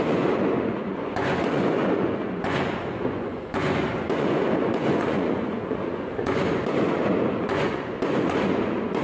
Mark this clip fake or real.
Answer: fake